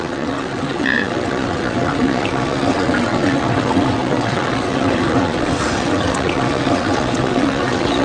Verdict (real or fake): fake